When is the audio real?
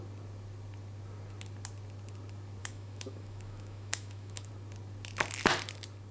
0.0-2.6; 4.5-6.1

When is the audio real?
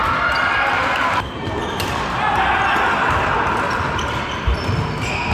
0.0-5.3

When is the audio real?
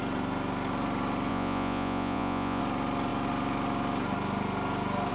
0.0-1.3; 2.6-5.1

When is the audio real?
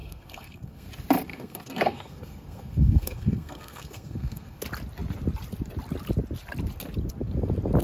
0.9-1.3; 4.6-7.8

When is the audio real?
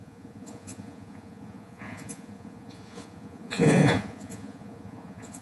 none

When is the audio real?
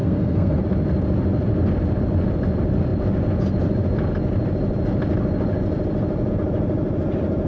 0.6-7.5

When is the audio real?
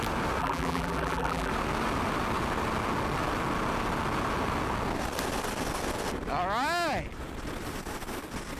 0.0-0.4; 1.5-8.6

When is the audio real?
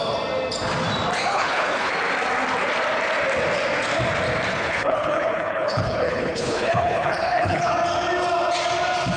0.0-1.3; 1.9-4.5; 7.7-9.2